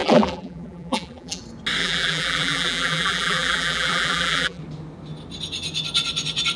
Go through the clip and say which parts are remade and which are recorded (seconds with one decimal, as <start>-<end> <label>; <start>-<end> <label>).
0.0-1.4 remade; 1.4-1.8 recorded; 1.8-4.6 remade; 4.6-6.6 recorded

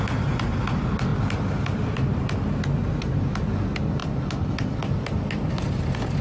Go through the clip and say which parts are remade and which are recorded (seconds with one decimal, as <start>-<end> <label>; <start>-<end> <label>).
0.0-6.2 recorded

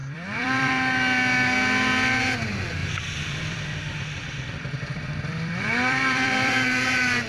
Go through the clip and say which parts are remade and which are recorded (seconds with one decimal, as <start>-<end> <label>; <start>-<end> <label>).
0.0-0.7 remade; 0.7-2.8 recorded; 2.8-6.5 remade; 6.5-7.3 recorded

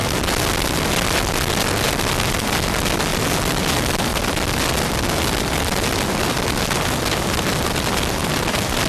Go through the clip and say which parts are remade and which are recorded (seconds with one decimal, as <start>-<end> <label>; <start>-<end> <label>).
0.0-3.1 recorded; 3.1-3.6 remade; 3.6-8.9 recorded

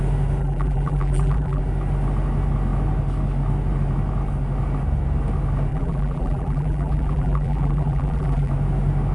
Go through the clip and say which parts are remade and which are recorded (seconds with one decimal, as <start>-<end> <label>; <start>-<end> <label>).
0.0-0.4 recorded; 0.4-1.6 remade; 1.6-5.7 recorded; 5.7-8.5 remade; 8.5-9.1 recorded

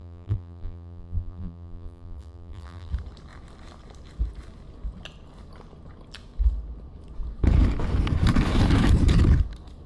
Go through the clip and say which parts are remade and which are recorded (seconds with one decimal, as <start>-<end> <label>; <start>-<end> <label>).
0.0-2.9 remade; 2.9-9.9 recorded

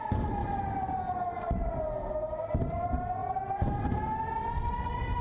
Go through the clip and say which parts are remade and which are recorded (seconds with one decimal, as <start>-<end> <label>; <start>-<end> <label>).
0.0-5.2 recorded

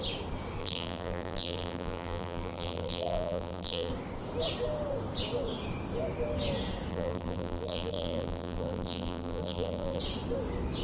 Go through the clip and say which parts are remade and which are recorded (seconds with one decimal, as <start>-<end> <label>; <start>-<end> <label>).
0.0-0.6 recorded; 0.6-3.9 remade; 3.9-6.9 recorded; 6.9-10.0 remade; 10.0-10.8 recorded